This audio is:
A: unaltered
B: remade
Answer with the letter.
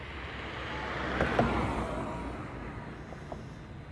A